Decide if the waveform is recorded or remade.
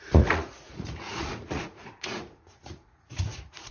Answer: remade